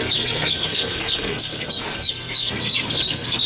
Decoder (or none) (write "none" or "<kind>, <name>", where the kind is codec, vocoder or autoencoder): codec, SNAC